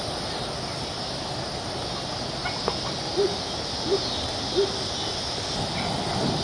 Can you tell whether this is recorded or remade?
recorded